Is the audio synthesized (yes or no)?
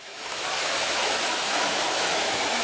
yes